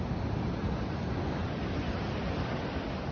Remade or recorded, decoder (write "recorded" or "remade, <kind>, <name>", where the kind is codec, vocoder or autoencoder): recorded